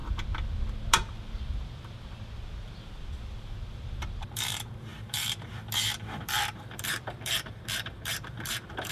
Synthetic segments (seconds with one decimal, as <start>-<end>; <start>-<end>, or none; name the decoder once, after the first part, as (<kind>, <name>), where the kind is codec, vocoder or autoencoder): 2.8-8.9 (vocoder, BigVGAN v2)

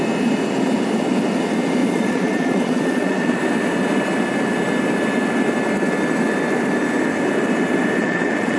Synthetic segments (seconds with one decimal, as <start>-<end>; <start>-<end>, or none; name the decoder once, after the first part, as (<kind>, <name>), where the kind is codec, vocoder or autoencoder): 1.8-3.4 (vocoder, Vocos); 8.0-8.6

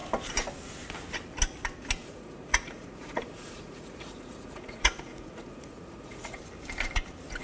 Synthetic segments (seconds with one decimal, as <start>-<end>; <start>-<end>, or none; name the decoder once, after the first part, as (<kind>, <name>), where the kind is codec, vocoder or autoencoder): 2.0-6.4 (vocoder, Vocos)